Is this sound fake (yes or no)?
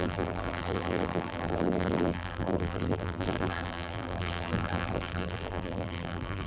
yes